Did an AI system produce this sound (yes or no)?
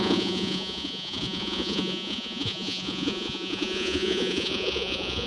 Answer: yes